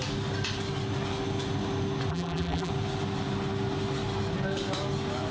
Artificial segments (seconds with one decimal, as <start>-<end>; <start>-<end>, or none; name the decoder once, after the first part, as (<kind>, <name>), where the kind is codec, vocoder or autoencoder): 2.1-2.7 (vocoder, BigVGAN v2)